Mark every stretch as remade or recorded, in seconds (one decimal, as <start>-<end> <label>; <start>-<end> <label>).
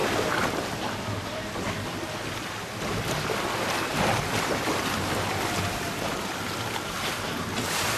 0.0-8.0 recorded